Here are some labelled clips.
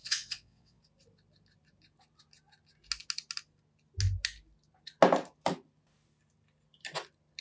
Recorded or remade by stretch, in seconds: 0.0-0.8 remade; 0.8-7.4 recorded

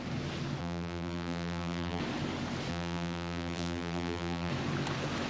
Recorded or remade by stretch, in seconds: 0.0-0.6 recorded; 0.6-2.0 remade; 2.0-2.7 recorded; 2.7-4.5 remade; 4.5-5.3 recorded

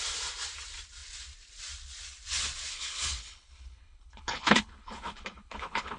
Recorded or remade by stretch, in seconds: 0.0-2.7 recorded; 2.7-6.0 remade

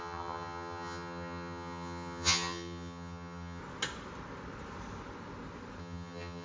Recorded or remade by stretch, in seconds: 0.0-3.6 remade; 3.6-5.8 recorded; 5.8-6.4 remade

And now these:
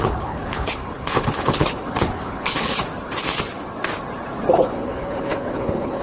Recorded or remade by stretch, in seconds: 0.0-2.8 remade; 2.8-4.6 recorded; 4.6-6.0 remade

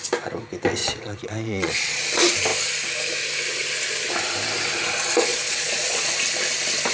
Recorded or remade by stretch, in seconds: 0.0-0.8 recorded; 0.8-2.0 remade; 2.0-5.3 recorded; 5.3-6.1 remade; 6.1-6.9 recorded